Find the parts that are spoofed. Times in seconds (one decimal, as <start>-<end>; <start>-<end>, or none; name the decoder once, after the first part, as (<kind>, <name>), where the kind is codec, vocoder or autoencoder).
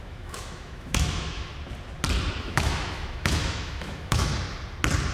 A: 0.0-1.5 (autoencoder, DAC-VAE); 2.4-4.3